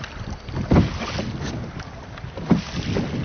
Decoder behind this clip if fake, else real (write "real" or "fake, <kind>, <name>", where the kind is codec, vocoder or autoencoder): real